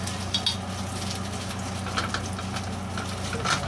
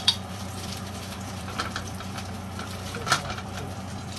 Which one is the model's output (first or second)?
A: second